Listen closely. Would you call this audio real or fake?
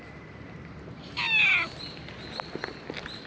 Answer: real